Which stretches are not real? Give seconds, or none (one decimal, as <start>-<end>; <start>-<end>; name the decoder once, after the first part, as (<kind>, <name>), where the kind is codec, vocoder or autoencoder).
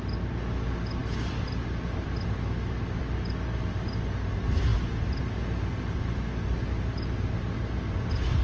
none